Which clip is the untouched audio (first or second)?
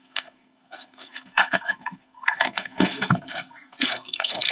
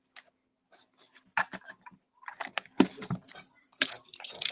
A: second